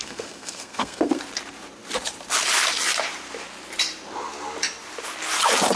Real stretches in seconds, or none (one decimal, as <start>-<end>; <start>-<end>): 1.2-5.8